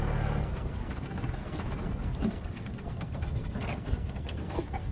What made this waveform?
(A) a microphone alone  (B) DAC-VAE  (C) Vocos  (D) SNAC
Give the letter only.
D